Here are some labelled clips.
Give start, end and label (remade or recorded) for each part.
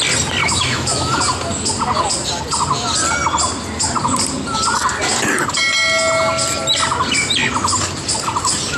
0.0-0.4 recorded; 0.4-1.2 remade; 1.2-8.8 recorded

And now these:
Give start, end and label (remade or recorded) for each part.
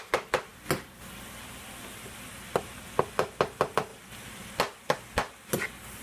0.0-6.0 recorded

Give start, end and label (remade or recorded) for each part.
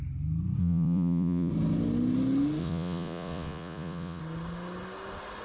0.0-0.6 recorded; 0.6-1.5 remade; 1.5-2.6 recorded; 2.6-4.2 remade; 4.2-5.4 recorded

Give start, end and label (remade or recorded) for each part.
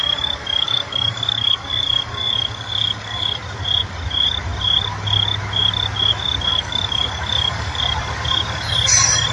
0.0-3.4 remade; 3.4-6.5 recorded; 6.5-7.8 remade; 7.8-9.3 recorded